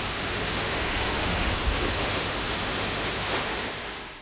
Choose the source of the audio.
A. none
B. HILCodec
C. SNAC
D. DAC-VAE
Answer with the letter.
D